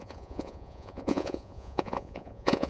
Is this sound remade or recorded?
remade